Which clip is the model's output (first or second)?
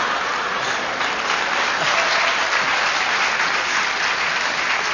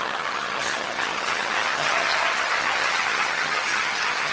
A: second